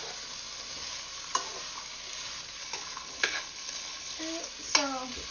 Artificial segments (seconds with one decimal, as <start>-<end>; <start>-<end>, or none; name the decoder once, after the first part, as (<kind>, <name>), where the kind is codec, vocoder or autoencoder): 2.6-4.2 (codec, HILCodec)